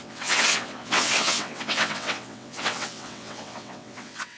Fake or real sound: fake